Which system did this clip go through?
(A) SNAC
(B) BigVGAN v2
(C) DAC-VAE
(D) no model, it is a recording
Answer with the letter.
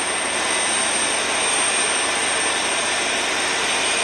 D